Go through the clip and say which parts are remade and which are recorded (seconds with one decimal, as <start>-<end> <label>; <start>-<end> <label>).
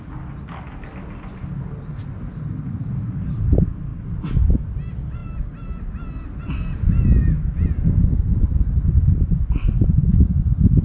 0.0-10.8 recorded